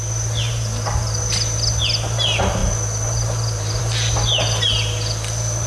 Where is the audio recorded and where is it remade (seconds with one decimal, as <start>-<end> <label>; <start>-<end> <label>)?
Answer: 0.0-5.7 recorded

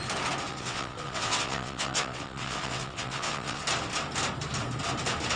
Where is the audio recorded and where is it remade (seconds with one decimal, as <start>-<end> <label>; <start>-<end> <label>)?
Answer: 0.0-0.5 recorded; 0.5-3.6 remade; 3.6-5.4 recorded

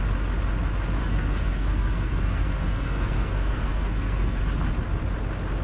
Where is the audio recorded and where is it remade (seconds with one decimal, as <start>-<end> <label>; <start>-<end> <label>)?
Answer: 0.0-1.0 recorded; 1.0-4.4 remade; 4.4-5.6 recorded

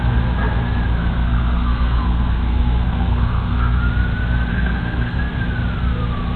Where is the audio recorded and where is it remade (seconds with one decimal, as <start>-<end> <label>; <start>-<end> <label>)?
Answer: 0.0-0.9 recorded; 0.9-3.8 remade; 3.8-4.5 recorded; 4.5-5.2 remade; 5.2-6.4 recorded

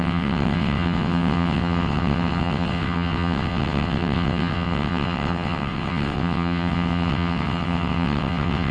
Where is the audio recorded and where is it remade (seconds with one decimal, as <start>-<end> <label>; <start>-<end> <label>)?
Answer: 0.0-8.7 remade

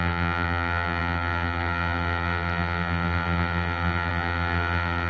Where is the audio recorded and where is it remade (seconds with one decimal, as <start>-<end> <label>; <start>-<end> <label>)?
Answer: 0.0-5.1 remade

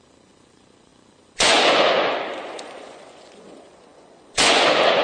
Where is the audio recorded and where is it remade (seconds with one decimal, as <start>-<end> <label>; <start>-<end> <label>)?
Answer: 0.0-5.0 remade

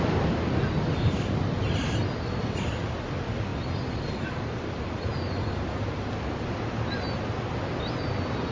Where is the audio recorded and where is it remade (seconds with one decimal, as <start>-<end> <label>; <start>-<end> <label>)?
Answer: 0.0-3.5 recorded; 3.5-4.3 remade; 4.3-8.5 recorded